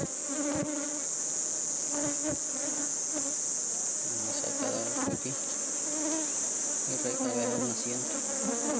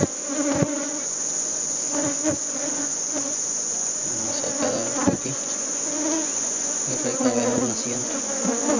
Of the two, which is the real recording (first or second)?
first